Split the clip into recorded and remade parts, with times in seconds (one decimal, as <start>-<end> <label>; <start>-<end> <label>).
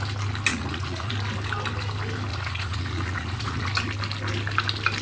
0.0-0.5 recorded; 0.5-1.1 remade; 1.1-2.3 recorded; 2.3-3.7 remade; 3.7-5.0 recorded